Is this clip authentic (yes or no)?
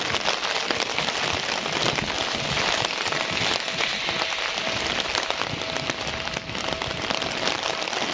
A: yes